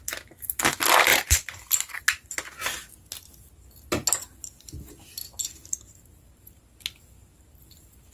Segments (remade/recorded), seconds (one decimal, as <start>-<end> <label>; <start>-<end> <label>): 0.0-1.1 recorded; 1.1-2.0 remade; 2.0-8.1 recorded